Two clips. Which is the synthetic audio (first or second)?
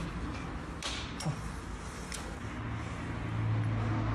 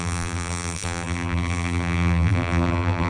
second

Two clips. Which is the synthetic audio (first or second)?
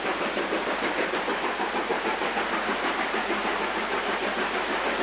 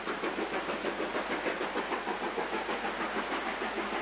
first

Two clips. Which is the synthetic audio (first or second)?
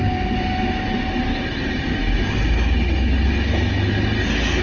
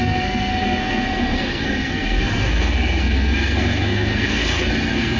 second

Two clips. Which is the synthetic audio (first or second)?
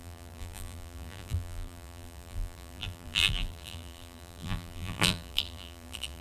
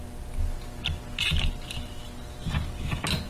first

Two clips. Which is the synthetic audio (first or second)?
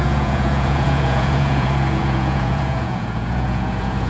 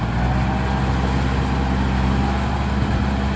first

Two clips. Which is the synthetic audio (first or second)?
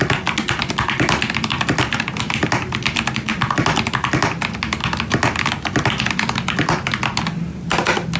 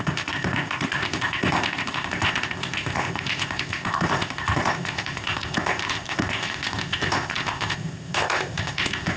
second